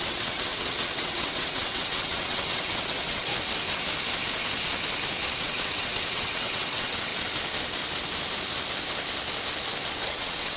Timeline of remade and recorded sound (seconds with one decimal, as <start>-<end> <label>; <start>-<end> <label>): 0.0-3.3 remade; 3.3-5.4 recorded; 5.4-7.1 remade; 7.1-9.9 recorded; 9.9-10.6 remade